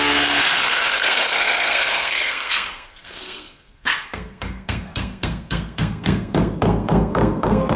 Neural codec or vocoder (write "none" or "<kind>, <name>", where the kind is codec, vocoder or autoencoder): codec, SNAC